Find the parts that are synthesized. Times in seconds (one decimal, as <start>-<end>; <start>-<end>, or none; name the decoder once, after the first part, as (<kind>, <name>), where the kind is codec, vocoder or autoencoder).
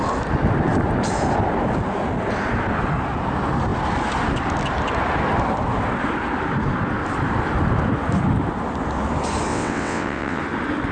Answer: 9.5-10.4 (vocoder, WaveNeXt)